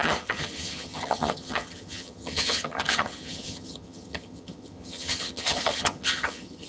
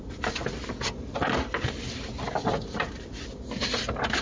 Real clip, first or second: second